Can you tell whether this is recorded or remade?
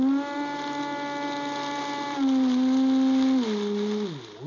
recorded